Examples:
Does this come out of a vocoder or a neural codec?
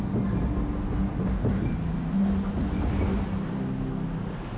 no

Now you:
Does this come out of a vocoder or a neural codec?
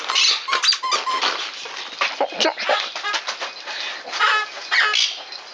no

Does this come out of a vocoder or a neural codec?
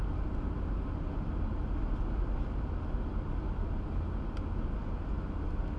no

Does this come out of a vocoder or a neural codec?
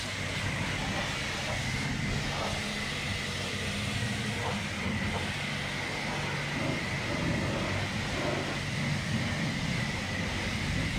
no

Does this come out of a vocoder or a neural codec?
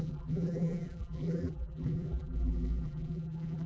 yes